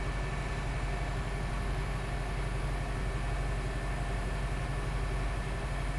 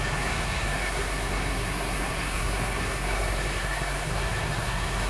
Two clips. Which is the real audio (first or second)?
first